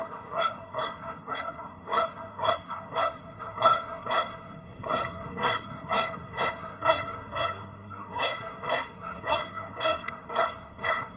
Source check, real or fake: fake